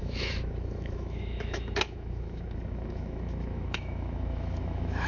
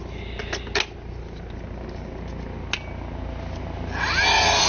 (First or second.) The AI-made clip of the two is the first